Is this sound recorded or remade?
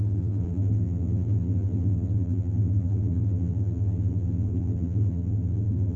remade